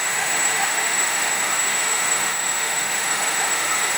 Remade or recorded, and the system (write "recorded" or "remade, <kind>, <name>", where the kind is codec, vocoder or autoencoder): remade, autoencoder, DAC-VAE